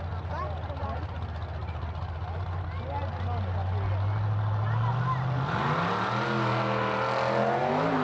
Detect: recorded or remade recorded